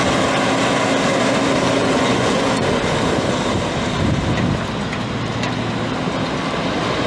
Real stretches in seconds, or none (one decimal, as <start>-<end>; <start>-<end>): 0.0-1.8; 2.5-7.1